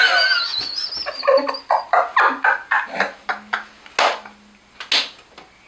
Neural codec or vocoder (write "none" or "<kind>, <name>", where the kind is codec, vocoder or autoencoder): none